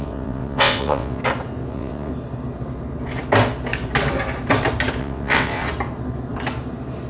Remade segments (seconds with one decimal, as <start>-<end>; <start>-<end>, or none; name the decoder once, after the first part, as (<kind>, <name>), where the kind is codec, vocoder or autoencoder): 0.0-1.2 (vocoder, WaveNeXt); 1.7-2.1; 5.0-5.6